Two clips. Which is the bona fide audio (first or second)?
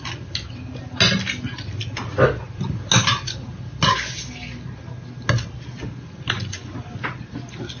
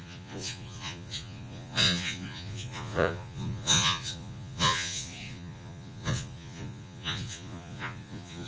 first